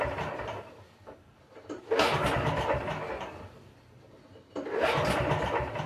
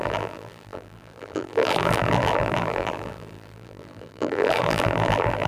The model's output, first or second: second